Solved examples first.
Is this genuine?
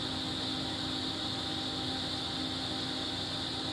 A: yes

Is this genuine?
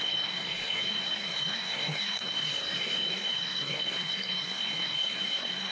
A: no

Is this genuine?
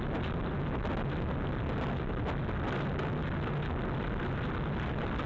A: yes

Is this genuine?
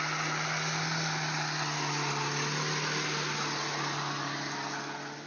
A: yes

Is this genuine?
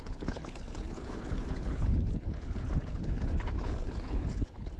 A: no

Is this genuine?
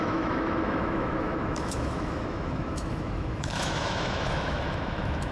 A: no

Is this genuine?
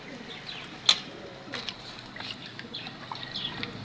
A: yes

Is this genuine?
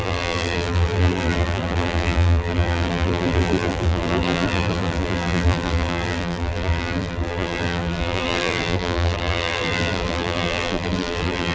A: no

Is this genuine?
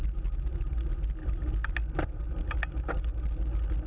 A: yes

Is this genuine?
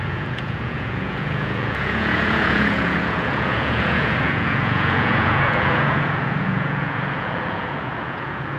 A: no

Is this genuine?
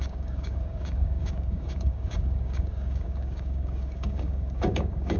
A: no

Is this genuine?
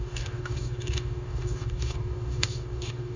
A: no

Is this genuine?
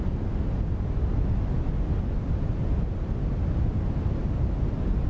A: yes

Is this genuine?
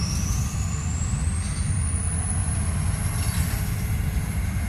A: yes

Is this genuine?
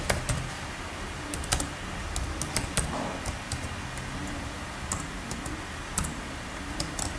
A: yes